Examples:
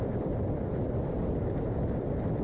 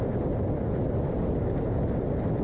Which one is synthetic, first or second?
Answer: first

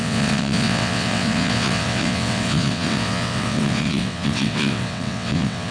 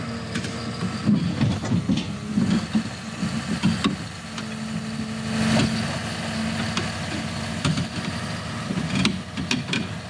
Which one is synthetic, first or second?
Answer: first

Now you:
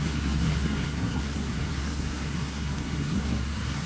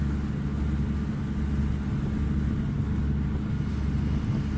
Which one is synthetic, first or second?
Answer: first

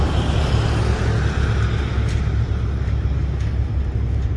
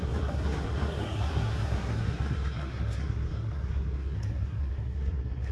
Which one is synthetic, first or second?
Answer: second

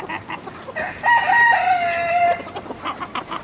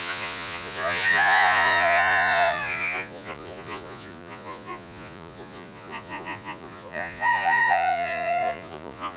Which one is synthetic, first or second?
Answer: second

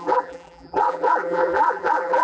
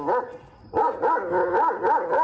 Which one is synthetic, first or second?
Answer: first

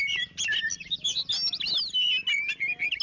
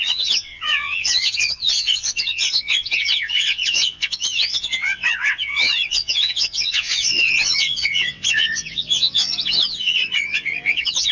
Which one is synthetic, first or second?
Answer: second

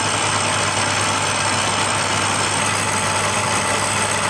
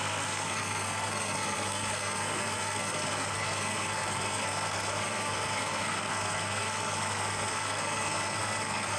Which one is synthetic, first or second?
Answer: second